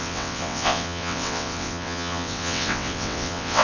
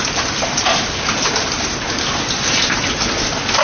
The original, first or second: second